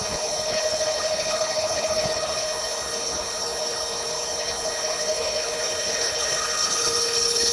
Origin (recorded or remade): remade